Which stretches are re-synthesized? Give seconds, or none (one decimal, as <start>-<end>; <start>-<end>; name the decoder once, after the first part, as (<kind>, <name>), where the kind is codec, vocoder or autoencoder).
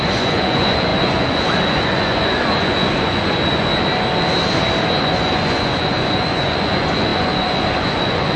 0.0-3.7 (vocoder, Vocos); 5.0-8.4